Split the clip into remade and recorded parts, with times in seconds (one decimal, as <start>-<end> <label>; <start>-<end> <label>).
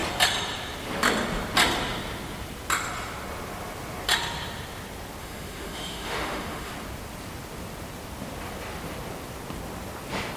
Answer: 0.0-5.2 recorded; 5.2-6.7 remade; 6.7-10.4 recorded